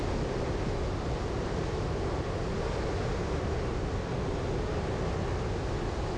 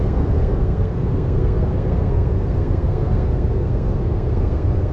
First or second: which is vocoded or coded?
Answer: second